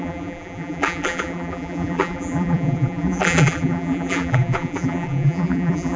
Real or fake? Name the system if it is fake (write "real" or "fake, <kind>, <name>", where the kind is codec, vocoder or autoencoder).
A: fake, vocoder, BigVGAN v2